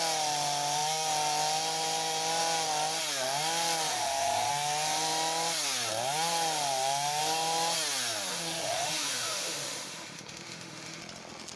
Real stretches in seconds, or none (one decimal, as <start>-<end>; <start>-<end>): 0.0-3.9; 4.5-8.3; 11.0-11.6